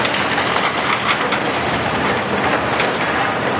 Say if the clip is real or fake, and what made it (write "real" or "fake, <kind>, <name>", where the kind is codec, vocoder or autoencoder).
real